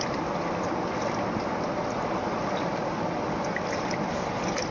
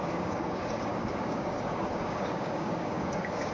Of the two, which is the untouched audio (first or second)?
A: first